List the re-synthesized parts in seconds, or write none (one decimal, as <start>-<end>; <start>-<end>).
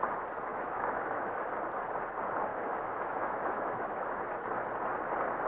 0.5-1.5; 2.5-4.2